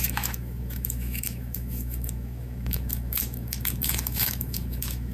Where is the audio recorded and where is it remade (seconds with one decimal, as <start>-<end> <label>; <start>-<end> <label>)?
0.0-5.1 remade